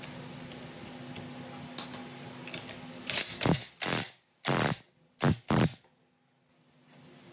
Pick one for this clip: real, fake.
real